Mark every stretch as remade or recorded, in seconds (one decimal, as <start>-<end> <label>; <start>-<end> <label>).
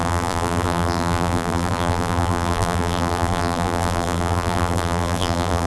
0.0-5.7 remade